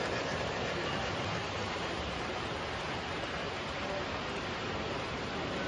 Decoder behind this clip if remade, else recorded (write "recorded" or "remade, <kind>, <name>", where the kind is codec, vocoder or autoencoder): recorded